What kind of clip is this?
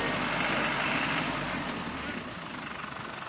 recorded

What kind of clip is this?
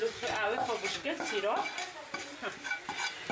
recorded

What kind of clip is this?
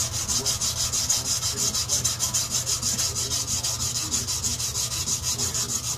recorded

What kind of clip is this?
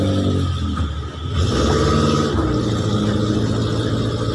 recorded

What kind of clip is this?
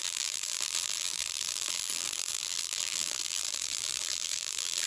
remade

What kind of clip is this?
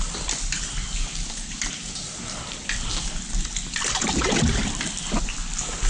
recorded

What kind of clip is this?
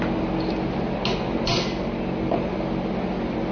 recorded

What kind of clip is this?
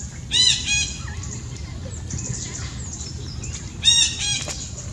recorded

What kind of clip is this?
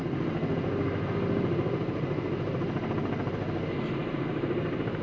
recorded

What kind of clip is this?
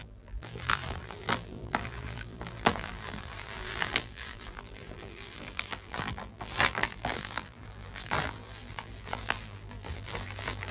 remade